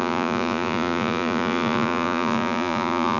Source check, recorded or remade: remade